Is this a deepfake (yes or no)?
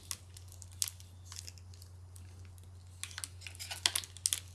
no